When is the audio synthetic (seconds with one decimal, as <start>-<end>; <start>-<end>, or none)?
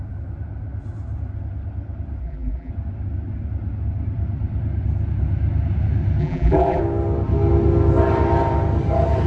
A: 2.2-2.7; 6.2-6.8